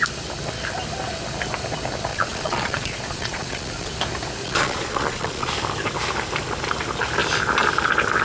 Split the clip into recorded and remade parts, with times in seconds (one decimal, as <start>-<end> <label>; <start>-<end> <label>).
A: 0.0-2.1 recorded; 2.1-3.9 remade; 3.9-4.4 recorded; 4.4-5.5 remade; 5.5-8.2 recorded